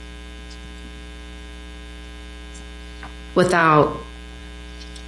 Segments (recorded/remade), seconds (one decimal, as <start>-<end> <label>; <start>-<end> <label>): 0.0-5.1 recorded